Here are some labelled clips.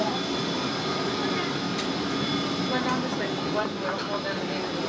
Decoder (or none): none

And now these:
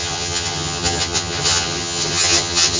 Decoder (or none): vocoder, HiFi-GAN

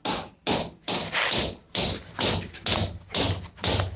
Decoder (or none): none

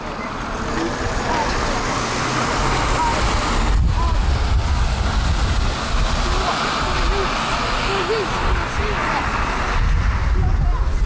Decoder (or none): none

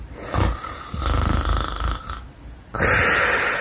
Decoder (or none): none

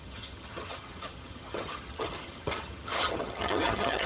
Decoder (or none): vocoder, HiFi-GAN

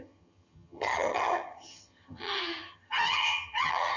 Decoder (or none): vocoder, HiFi-GAN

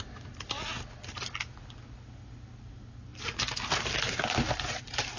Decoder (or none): none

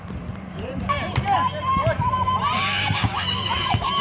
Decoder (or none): none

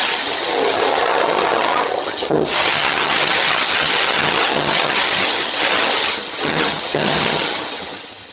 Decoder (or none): vocoder, HiFi-GAN